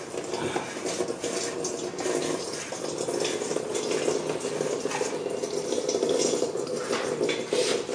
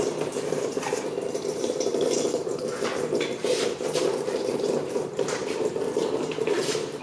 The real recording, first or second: first